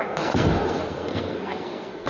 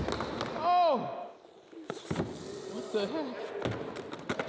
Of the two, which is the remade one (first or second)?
first